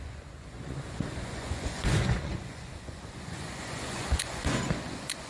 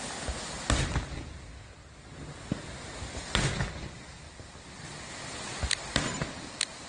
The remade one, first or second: first